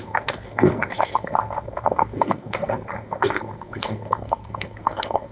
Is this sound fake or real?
fake